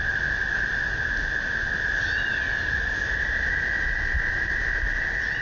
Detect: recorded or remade recorded